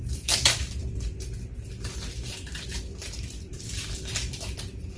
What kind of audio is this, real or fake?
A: fake